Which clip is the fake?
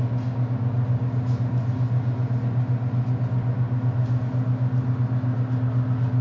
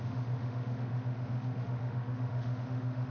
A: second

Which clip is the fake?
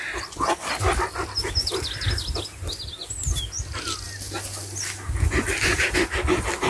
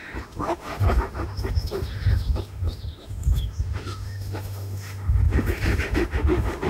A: second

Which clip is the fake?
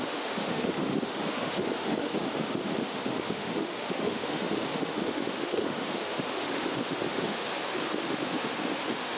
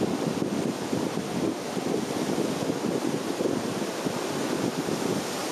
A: first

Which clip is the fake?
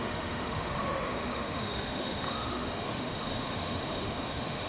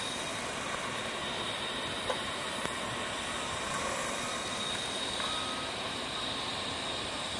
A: first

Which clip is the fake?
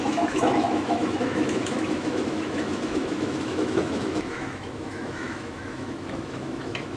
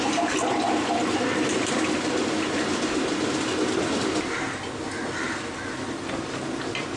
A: first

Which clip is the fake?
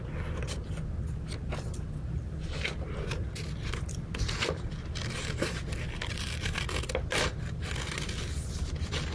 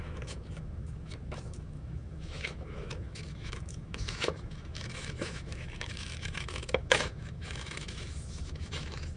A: second